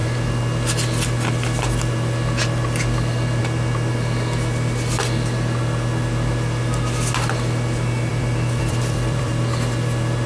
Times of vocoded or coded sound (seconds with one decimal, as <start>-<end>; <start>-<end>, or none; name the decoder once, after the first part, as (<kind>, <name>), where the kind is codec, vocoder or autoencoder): 8.1-9.4 (vocoder, BigVGAN v2)